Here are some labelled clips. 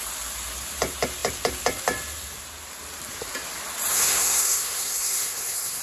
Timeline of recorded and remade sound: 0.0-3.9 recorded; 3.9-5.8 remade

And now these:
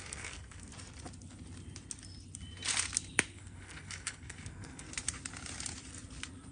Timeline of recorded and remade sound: 0.0-0.7 remade; 0.7-3.3 recorded; 3.3-4.9 remade; 4.9-6.5 recorded

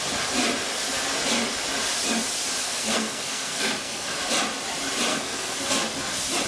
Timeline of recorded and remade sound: 0.0-2.6 recorded; 2.6-4.1 remade; 4.1-5.1 recorded; 5.1-5.7 remade; 5.7-6.5 recorded